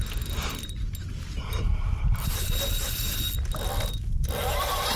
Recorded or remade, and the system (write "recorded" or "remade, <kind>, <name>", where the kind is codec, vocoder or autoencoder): recorded